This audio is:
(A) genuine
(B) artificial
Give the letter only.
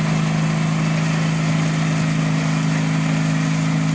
A